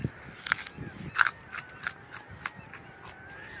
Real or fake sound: real